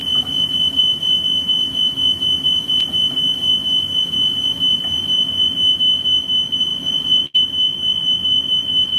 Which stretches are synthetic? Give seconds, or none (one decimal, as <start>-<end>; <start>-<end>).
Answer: none